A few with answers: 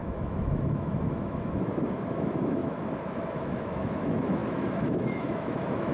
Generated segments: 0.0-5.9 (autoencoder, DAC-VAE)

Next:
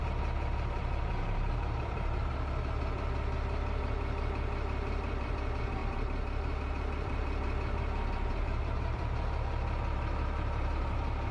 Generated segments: 0.0-11.3 (vocoder, BigVGAN v2)

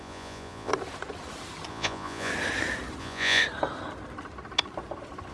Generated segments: 0.0-0.7 (vocoder, Vocos); 1.7-2.3; 3.0-3.4

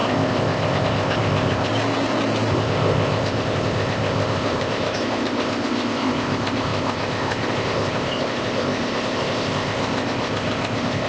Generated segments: 0.0-1.7 (codec, ZipCodec); 2.5-11.1

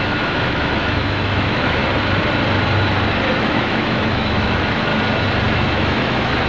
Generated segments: 0.0-1.8 (autoencoder, DAC-VAE); 3.4-4.9; 5.5-6.5

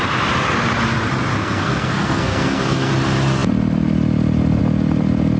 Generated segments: 1.3-2.9 (codec, SNAC)

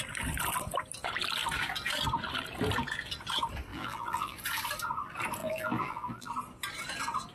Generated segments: 3.7-4.4 (vocoder, BigVGAN v2); 5.4-6.3